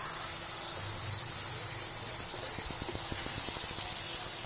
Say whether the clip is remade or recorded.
recorded